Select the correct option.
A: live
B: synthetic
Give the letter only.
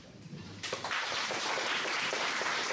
B